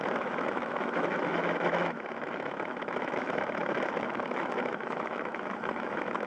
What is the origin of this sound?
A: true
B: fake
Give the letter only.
B